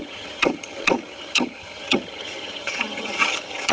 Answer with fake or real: fake